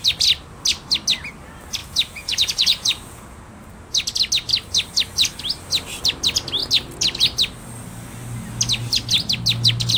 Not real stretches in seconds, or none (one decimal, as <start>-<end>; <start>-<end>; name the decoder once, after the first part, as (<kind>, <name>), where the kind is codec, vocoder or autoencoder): 1.8-3.5 (vocoder, Vocos)